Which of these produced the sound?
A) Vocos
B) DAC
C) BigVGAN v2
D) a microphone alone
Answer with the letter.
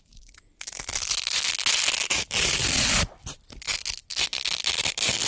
D